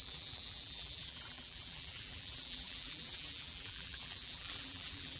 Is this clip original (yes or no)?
no